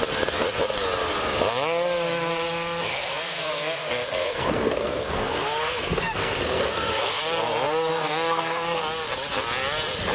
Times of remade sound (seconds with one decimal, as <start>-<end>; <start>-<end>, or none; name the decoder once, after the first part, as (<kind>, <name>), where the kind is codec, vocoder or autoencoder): 2.9-7.2 (codec, SNAC); 7.9-8.8